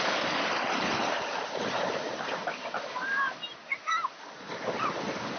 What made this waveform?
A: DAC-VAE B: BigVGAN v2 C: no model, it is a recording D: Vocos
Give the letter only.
C